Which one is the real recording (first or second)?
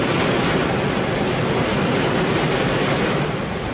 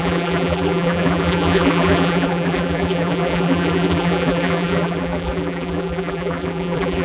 first